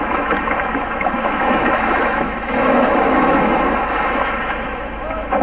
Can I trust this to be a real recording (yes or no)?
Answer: no